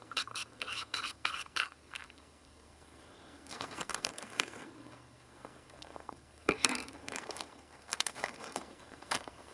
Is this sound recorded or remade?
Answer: remade